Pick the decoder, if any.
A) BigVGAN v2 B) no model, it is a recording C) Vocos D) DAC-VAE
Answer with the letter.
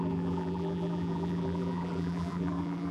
A